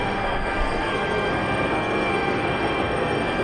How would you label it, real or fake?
fake